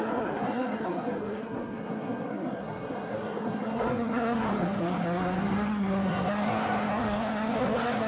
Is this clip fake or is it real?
fake